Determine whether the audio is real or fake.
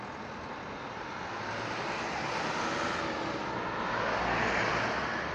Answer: real